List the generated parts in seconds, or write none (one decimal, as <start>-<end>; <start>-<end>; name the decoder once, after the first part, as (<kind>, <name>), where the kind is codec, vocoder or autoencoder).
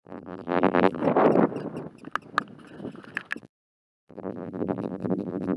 0.0-1.0 (vocoder, BigVGAN v2); 3.4-5.6